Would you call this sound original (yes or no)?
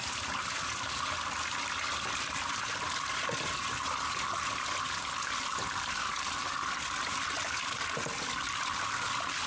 yes